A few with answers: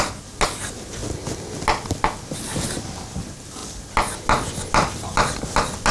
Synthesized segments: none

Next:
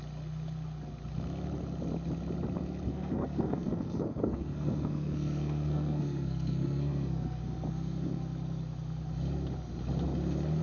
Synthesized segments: 2.9-7.4

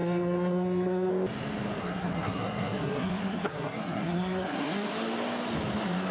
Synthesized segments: 0.0-1.1; 1.8-4.9

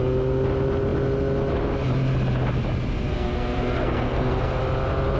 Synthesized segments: 3.1-4.6

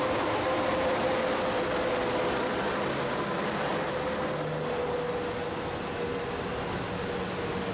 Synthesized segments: none

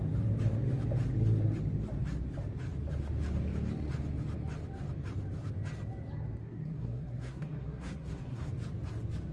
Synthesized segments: 6.4-8.5